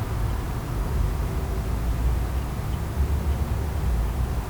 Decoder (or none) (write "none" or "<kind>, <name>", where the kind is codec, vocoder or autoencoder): none